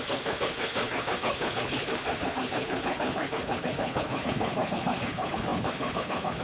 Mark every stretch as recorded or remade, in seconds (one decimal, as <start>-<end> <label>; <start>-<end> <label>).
0.0-6.4 remade